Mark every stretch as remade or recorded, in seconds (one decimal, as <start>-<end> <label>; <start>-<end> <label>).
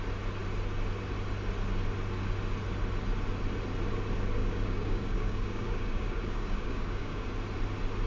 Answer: 0.0-4.4 recorded; 4.4-7.3 remade; 7.3-8.1 recorded